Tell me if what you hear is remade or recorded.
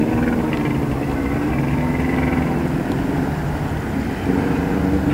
recorded